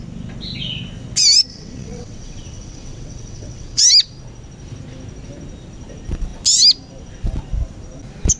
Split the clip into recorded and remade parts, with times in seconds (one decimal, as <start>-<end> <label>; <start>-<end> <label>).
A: 0.0-1.5 recorded; 1.5-3.8 remade; 3.8-8.4 recorded